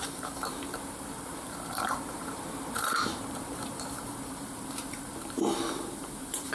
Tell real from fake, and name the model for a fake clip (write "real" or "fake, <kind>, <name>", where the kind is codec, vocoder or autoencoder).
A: fake, vocoder, BigVGAN v2